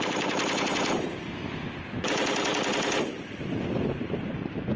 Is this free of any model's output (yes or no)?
no